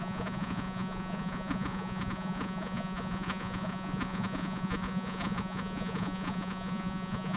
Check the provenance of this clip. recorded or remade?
remade